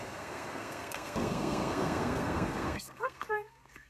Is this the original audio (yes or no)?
no